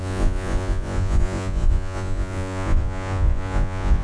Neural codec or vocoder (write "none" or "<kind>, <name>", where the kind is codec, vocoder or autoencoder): vocoder, Vocos